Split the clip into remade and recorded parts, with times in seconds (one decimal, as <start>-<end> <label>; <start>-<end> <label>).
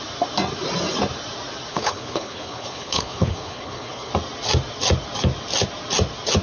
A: 0.0-1.7 recorded; 1.7-4.1 remade; 4.1-6.4 recorded